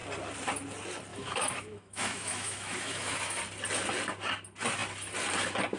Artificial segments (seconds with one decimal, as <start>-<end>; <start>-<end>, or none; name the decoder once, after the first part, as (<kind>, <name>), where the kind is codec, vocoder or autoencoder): 1.1-3.4 (autoencoder, DAC-VAE)